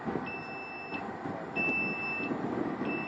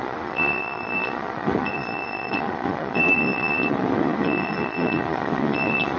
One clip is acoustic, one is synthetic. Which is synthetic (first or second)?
second